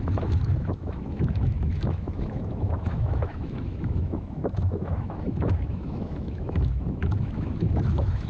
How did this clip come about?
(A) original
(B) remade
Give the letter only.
B